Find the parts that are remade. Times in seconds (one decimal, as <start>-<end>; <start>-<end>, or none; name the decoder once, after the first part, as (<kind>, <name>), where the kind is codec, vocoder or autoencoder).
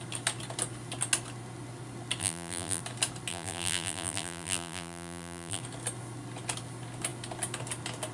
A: 2.2-2.8 (vocoder, BigVGAN v2); 3.3-5.6